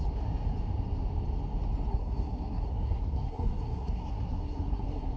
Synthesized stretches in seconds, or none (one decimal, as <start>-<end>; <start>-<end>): 1.9-5.2